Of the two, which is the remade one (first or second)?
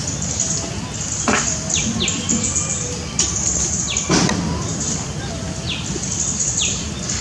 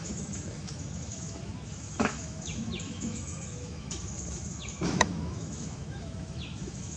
second